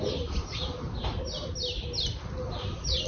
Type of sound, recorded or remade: recorded